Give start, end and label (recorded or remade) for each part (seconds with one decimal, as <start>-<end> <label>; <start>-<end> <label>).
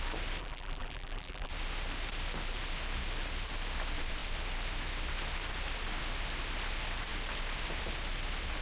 0.0-0.4 recorded; 0.4-1.5 remade; 1.5-8.6 recorded